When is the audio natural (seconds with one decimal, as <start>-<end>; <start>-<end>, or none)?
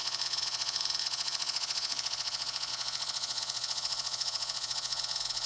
none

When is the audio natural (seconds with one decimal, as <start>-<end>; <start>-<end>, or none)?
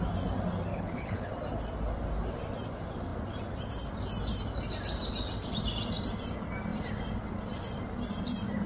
0.0-0.7; 1.3-8.7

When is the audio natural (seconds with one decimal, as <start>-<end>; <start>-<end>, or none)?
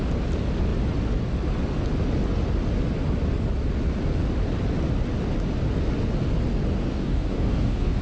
0.0-6.9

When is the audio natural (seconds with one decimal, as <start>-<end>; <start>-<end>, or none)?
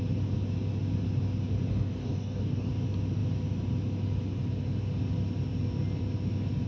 0.0-1.7; 2.7-6.7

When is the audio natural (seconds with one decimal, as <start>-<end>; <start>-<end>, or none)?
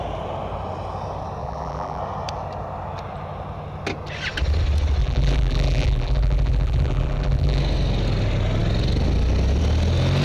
0.0-1.4; 2.0-5.0; 7.6-10.2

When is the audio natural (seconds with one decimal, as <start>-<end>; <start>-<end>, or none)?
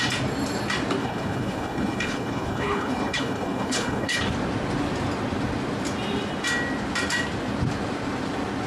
0.0-1.0; 4.2-8.7